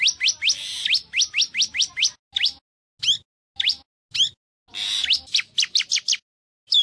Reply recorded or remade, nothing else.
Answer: recorded